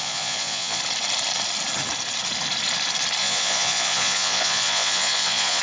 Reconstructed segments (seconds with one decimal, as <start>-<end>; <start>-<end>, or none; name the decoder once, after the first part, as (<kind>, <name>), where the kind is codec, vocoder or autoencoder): 0.0-0.8 (vocoder, Vocos); 3.2-5.6

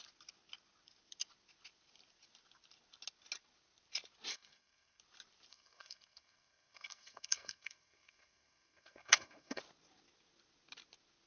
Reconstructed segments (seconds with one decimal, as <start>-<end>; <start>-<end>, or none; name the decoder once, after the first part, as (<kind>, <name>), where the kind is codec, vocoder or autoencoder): 4.3-5.0 (codec, SNAC); 5.5-9.6

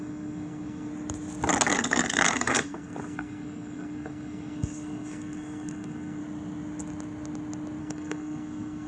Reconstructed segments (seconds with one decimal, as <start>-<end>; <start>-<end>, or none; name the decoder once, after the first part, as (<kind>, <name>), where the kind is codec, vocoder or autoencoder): 0.0-0.9 (codec, SNAC); 1.7-6.2; 7.8-8.9